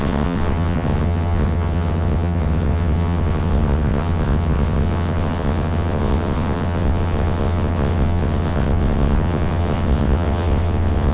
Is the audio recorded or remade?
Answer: remade